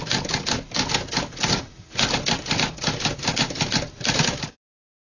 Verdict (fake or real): real